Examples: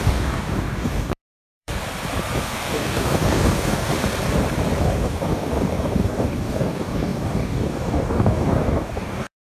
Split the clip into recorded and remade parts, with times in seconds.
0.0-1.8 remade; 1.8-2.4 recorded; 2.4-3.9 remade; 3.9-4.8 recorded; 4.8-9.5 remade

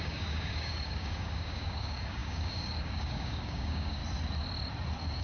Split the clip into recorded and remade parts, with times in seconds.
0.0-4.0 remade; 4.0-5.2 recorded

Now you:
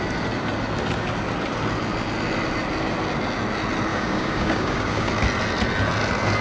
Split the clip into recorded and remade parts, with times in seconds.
0.0-3.9 recorded; 3.9-5.1 remade; 5.1-6.4 recorded

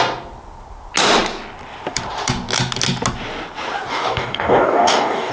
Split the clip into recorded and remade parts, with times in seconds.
0.0-3.9 recorded; 3.9-5.3 remade

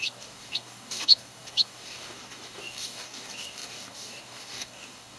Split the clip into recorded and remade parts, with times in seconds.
0.0-5.2 remade